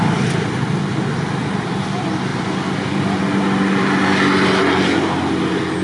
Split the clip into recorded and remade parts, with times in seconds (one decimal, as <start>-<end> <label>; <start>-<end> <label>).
0.0-5.8 recorded